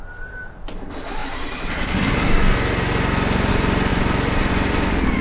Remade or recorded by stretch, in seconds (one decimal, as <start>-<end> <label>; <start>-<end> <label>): 0.0-3.9 recorded; 3.9-4.5 remade; 4.5-5.2 recorded